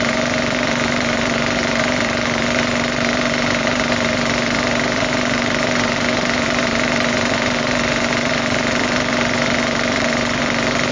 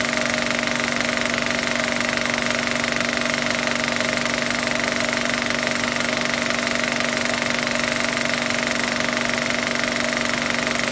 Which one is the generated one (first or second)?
first